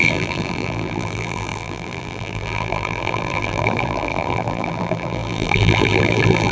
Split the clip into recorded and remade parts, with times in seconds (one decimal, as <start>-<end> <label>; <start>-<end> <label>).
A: 0.0-6.5 remade